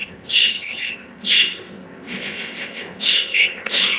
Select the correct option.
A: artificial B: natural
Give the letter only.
A